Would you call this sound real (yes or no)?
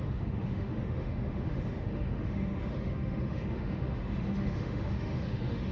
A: no